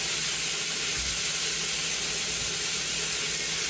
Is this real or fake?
real